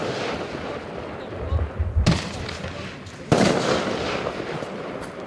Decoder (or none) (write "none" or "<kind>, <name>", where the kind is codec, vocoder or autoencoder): none